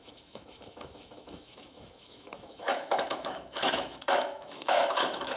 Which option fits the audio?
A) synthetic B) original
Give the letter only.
A